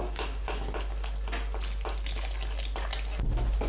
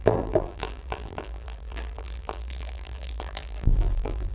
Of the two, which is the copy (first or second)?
second